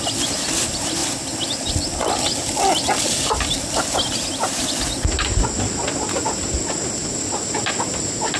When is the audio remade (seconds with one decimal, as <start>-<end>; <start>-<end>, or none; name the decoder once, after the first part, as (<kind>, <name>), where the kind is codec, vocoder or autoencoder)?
none